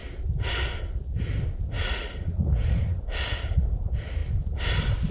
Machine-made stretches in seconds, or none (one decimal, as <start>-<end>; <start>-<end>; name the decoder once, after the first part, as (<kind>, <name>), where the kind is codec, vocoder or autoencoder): 1.8-3.0 (vocoder, Vocos)